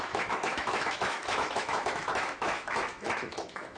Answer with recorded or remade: remade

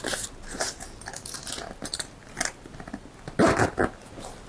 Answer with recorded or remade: recorded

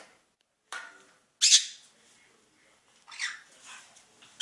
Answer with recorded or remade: recorded